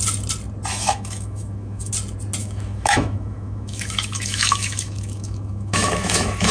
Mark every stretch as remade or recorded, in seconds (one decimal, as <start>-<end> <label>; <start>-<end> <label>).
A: 0.0-0.7 recorded; 0.7-1.9 remade; 1.9-2.4 recorded; 2.4-6.5 remade